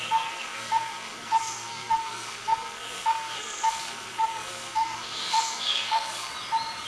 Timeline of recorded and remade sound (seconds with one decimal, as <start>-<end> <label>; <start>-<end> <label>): 0.0-6.3 remade; 6.3-6.9 recorded